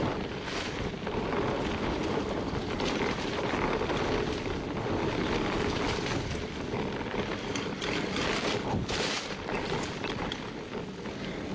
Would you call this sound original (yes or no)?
yes